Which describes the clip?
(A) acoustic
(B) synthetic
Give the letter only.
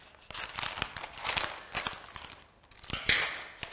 A